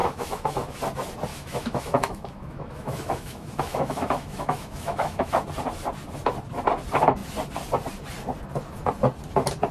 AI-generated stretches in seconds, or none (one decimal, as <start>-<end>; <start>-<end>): 0.0-0.8; 1.3-5.3